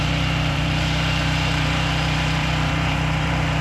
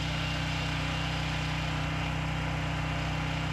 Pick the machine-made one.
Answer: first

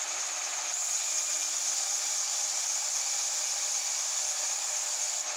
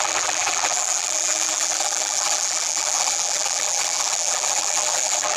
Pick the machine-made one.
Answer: second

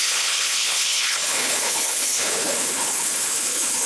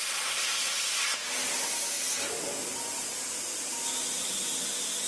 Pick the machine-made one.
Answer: first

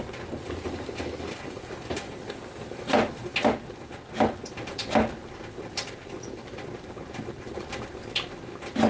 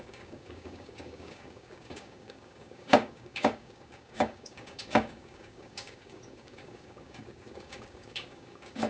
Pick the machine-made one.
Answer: second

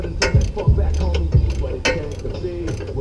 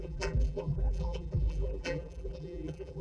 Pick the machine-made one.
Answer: second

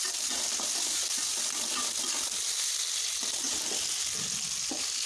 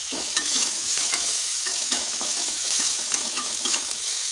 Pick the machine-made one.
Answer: second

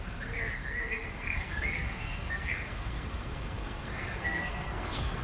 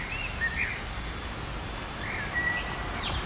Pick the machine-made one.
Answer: first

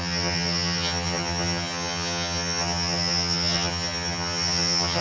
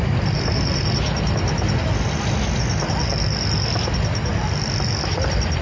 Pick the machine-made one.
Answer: first